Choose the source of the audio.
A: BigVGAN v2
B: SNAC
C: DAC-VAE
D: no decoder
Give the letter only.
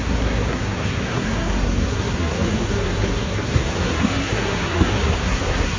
B